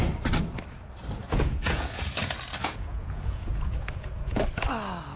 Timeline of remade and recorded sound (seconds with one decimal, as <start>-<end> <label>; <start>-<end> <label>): 0.0-1.2 recorded; 1.2-2.2 remade; 2.2-2.6 recorded; 2.6-4.4 remade; 4.4-5.2 recorded